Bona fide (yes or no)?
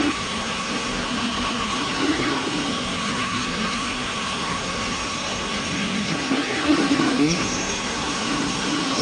no